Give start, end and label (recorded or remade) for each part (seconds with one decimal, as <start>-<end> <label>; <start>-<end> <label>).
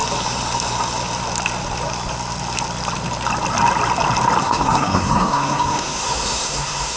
0.0-4.4 recorded; 4.4-7.0 remade